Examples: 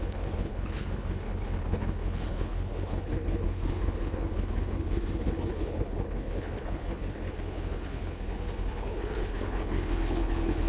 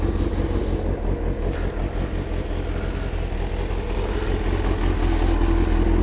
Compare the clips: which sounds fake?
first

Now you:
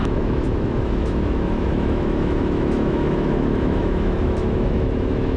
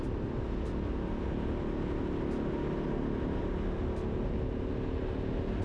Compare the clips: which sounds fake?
first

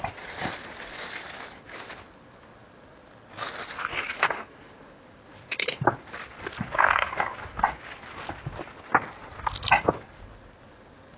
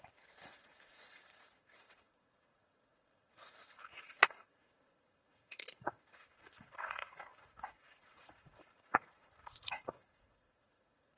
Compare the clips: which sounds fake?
second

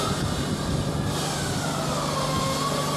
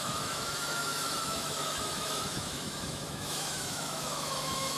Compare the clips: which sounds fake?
second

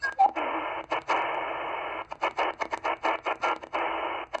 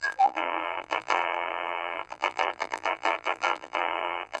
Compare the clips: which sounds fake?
second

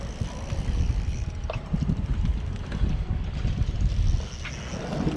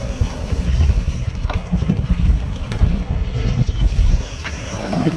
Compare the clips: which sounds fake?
second